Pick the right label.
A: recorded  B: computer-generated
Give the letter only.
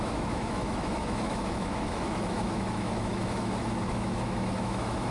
B